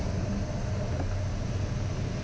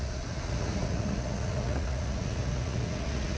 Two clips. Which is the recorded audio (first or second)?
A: first